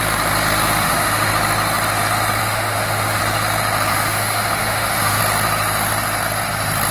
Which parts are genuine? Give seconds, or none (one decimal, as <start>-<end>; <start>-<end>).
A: 0.0-0.8; 1.3-2.4; 3.2-3.9; 5.2-6.9